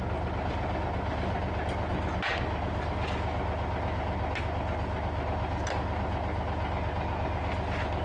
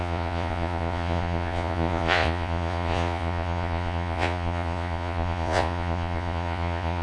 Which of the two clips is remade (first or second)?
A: second